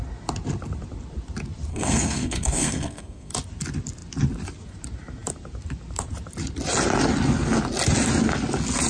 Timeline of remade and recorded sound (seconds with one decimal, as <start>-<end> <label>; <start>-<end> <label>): 0.0-1.7 recorded; 1.7-3.3 remade; 3.3-8.9 recorded